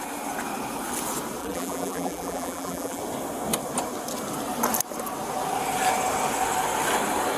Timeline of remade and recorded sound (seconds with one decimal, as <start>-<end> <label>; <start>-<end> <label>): 0.0-1.4 recorded; 1.4-3.0 remade; 3.0-7.4 recorded